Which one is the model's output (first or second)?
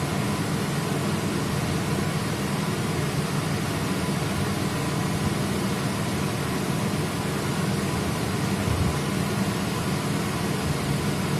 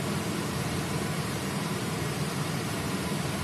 second